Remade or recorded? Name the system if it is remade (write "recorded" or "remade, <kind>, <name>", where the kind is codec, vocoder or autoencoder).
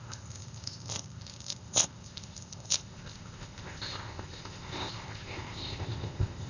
remade, codec, ZipCodec